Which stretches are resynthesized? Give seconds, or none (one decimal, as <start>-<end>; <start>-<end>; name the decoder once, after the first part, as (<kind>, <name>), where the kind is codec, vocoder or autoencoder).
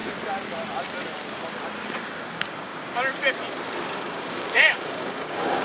2.0-2.7 (codec, DAC); 3.9-5.6